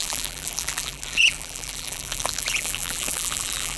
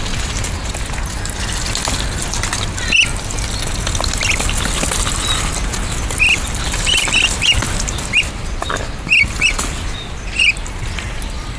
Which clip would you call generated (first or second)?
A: first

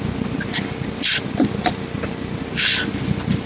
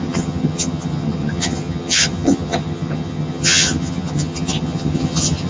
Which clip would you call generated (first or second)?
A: second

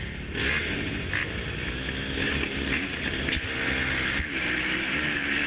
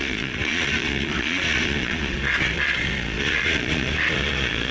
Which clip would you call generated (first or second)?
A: second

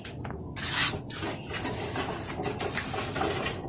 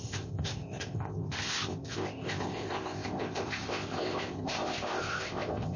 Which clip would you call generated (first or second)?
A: second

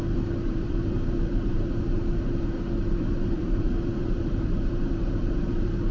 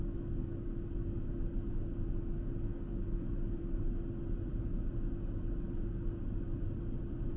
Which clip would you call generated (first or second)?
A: first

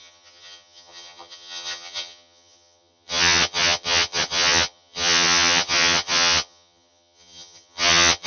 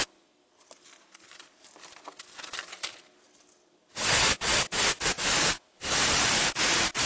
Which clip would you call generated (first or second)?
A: first